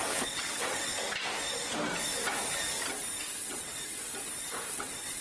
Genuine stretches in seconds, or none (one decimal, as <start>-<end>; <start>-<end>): 0.9-3.4; 4.1-4.7